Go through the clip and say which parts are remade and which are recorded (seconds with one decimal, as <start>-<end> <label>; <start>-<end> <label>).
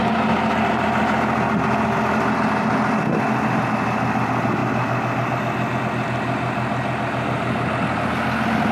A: 0.0-8.7 recorded